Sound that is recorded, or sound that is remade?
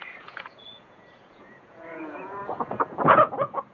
remade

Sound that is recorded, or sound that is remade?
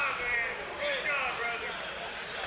recorded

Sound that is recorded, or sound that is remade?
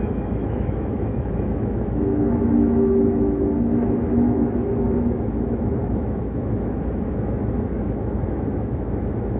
remade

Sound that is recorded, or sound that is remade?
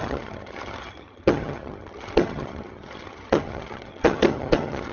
remade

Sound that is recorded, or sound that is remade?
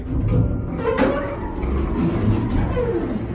recorded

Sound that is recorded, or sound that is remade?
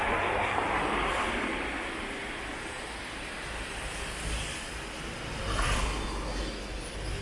recorded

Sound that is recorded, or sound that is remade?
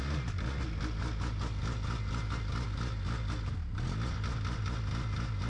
recorded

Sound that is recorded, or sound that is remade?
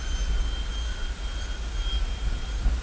recorded